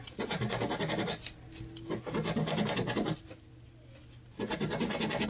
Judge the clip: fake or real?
real